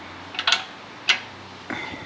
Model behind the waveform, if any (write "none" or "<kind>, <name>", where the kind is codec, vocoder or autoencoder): none